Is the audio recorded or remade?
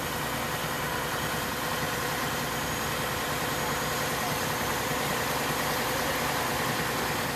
recorded